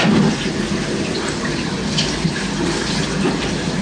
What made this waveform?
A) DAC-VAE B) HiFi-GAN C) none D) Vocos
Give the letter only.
C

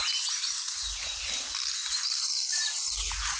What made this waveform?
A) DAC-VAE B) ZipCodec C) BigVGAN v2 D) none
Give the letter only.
D